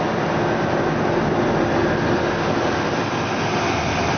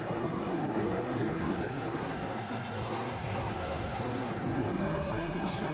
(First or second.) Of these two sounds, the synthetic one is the second